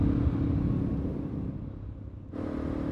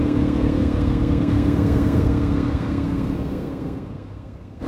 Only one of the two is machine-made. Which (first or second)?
second